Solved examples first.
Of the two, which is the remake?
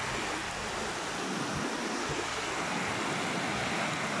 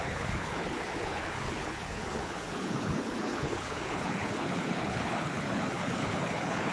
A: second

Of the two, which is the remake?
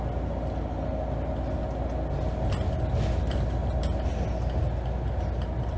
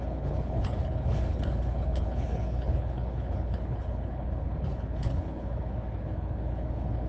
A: second